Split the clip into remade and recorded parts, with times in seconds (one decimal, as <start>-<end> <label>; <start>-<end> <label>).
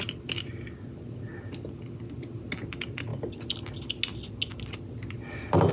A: 0.0-5.7 recorded